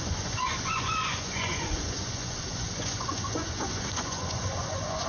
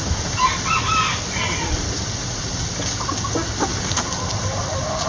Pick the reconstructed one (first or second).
first